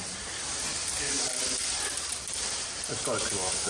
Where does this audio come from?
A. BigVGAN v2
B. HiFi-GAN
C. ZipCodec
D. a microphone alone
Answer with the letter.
A